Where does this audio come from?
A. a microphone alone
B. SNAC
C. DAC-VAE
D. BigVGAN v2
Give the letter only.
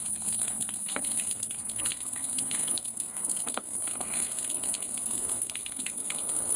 B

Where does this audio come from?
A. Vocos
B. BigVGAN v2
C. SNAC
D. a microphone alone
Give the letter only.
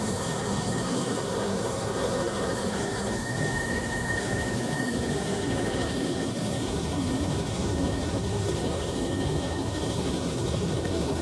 C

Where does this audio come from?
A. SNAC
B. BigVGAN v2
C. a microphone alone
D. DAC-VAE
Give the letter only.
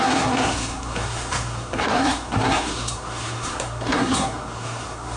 A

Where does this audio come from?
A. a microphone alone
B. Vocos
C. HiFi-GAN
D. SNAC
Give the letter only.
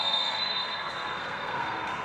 D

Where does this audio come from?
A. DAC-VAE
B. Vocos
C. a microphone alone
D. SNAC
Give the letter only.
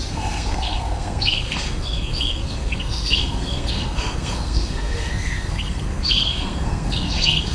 D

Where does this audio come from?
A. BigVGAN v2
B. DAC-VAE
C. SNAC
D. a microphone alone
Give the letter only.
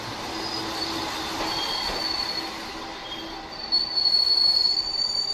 D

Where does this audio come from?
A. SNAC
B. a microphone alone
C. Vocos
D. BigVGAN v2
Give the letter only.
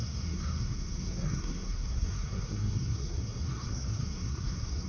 A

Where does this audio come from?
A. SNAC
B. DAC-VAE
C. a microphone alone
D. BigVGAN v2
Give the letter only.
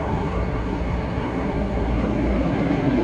A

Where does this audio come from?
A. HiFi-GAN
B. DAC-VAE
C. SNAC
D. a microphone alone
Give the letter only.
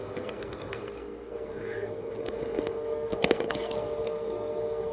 C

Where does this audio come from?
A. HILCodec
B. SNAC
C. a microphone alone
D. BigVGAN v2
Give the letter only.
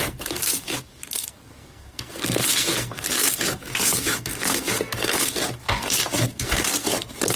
B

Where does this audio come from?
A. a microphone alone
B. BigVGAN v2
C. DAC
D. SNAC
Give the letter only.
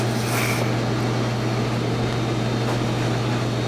A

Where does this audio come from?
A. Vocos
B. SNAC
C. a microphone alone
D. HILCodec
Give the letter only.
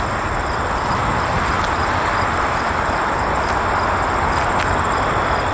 C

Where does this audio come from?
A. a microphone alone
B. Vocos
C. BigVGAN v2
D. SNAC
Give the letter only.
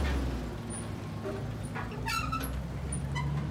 A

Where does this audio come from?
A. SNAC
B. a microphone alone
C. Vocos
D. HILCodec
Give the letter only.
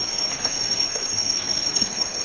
A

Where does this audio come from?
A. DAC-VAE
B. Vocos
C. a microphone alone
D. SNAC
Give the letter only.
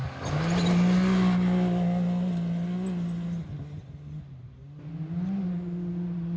C